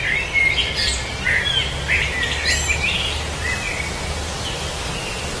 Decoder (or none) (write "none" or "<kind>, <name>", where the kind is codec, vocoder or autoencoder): none